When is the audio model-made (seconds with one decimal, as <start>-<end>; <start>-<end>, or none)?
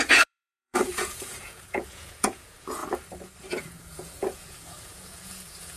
0.0-2.8; 3.6-5.8